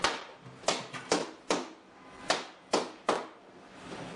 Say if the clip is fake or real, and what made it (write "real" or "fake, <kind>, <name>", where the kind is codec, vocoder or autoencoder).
real